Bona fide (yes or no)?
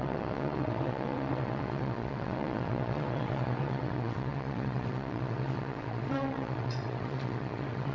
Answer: no